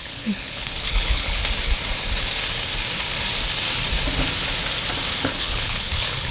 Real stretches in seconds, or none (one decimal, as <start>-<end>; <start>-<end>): 1.4-5.2